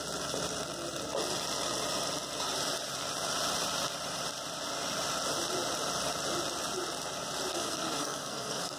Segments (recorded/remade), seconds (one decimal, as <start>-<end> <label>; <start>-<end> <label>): 0.0-7.5 recorded; 7.5-8.8 remade